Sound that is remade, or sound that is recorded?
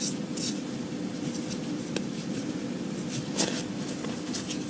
recorded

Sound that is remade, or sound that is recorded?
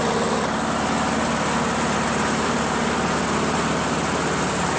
recorded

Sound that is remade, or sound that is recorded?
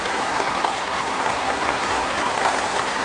remade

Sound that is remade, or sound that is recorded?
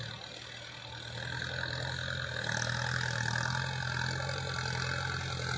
recorded